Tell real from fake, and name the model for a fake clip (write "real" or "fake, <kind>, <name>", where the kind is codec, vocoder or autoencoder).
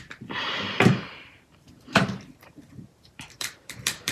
fake, vocoder, BigVGAN v2